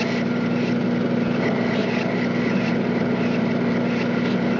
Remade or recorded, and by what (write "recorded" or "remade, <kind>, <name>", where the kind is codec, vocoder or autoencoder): recorded